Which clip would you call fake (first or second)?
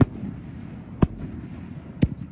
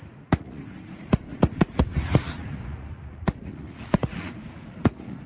second